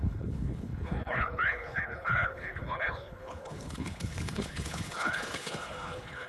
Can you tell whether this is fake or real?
fake